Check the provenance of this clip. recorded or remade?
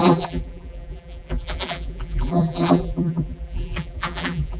remade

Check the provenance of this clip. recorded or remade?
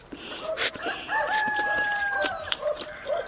remade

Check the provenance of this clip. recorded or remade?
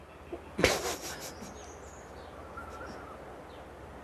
recorded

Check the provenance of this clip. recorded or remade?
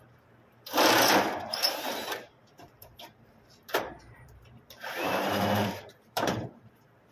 remade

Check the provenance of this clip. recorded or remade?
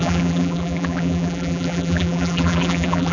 remade